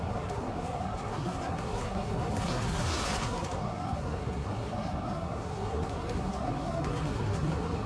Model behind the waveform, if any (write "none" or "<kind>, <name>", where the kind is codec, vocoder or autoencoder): codec, SNAC